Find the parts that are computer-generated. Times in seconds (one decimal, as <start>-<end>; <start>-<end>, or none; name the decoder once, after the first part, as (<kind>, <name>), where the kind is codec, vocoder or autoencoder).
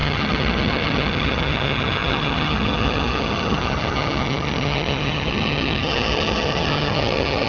0.0-7.5 (vocoder, HiFi-GAN)